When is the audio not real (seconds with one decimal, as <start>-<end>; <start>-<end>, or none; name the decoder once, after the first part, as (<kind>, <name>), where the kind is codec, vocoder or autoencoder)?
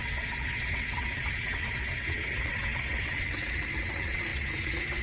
0.0-5.0 (vocoder, WaveNeXt)